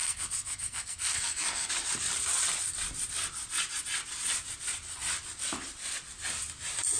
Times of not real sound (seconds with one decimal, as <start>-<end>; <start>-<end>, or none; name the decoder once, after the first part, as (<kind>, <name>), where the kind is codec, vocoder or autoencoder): 0.0-1.7 (codec, SNAC)